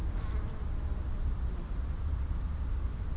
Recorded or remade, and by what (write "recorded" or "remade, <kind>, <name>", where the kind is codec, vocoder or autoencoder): remade, vocoder, BigVGAN v2